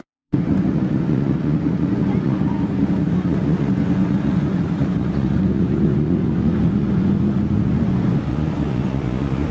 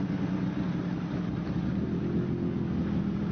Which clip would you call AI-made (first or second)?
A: first